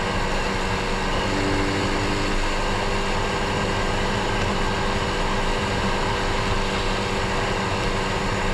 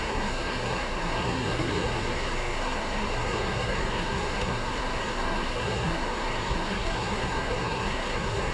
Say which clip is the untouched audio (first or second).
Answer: first